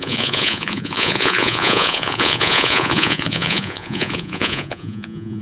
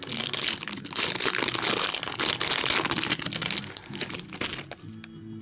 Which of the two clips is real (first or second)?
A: second